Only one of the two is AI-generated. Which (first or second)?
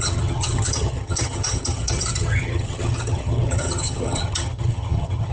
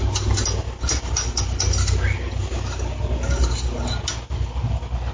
first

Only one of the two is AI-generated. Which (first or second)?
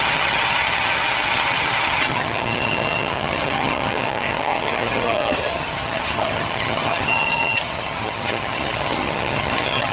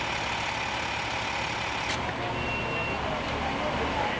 first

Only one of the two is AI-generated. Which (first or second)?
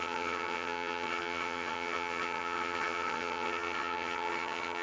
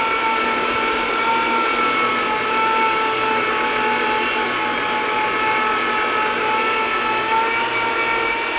first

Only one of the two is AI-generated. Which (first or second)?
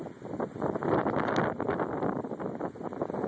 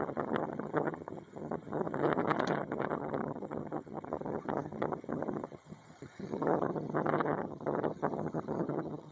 second